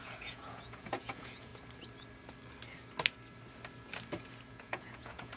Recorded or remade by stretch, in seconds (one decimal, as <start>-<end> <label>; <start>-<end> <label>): 0.0-1.5 remade; 1.5-4.5 recorded; 4.5-5.4 remade